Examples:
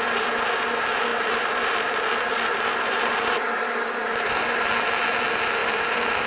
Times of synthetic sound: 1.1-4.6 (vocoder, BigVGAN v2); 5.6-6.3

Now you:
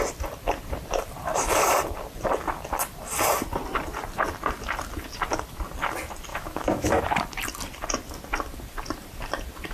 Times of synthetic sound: 6.3-7.0 (autoencoder, DAC-VAE)